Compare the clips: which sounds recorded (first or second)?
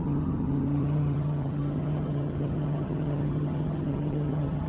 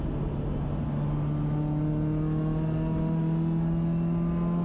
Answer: second